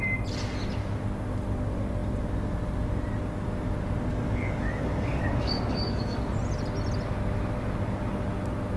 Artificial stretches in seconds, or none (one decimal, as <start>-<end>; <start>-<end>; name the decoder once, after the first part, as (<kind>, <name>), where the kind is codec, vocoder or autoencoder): 4.1-6.3 (codec, DAC)